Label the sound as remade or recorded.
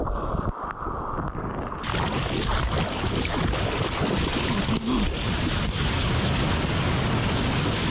recorded